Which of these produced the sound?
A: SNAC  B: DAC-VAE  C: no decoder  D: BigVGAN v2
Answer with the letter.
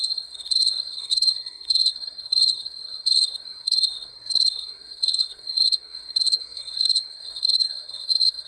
A